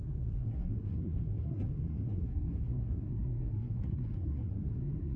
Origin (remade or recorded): remade